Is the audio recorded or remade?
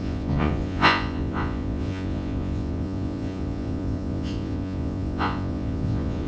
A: remade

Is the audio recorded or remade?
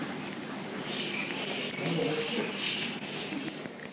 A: recorded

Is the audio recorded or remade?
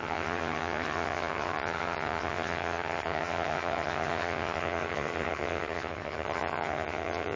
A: remade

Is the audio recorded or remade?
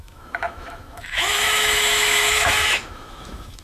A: remade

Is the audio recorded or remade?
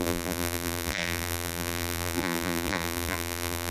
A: remade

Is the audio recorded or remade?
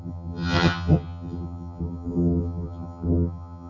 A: remade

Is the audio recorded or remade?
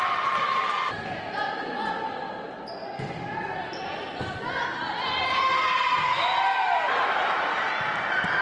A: recorded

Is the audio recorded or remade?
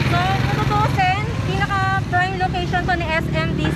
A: recorded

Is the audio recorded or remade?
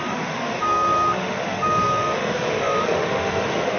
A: remade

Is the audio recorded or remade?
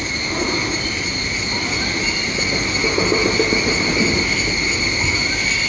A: recorded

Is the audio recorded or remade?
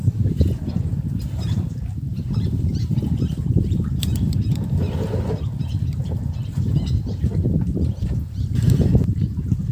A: remade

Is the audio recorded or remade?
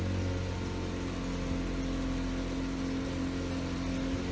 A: recorded